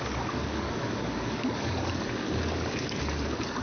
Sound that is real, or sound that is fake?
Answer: fake